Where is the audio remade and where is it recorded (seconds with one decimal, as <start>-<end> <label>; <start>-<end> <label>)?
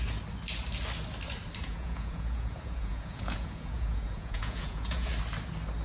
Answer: 0.0-1.6 recorded; 1.6-5.1 remade; 5.1-5.8 recorded